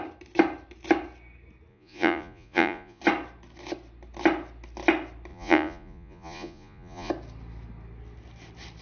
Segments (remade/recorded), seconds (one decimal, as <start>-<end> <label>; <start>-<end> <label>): 0.0-1.7 recorded; 1.7-3.0 remade; 3.0-5.3 recorded; 5.3-7.1 remade; 7.1-8.8 recorded

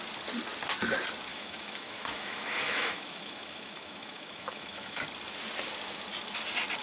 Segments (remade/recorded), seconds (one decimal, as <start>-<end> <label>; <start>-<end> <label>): 0.0-1.3 recorded; 1.3-5.0 remade; 5.0-6.8 recorded